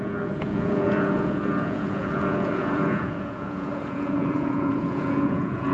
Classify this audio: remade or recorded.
remade